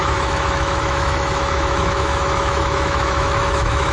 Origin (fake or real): fake